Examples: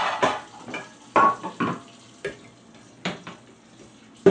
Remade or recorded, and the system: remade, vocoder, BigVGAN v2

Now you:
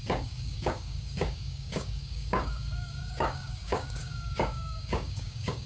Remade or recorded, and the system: remade, codec, DAC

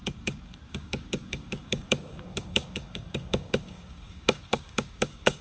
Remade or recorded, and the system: remade, codec, DAC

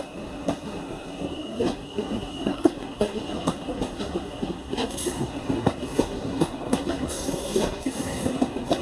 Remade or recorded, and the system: remade, codec, SNAC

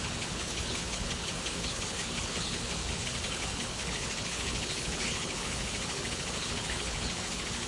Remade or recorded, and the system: remade, codec, HILCodec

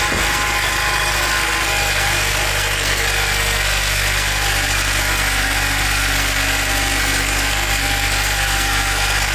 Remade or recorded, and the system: remade, codec, SNAC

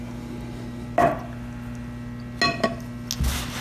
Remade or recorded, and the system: recorded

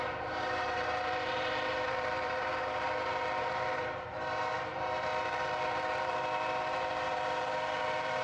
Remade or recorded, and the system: remade, vocoder, BigVGAN v2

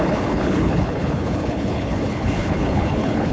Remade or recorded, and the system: remade, codec, HILCodec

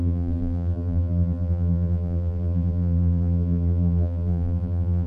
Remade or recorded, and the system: remade, vocoder, BigVGAN v2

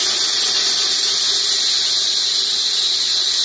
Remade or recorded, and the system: recorded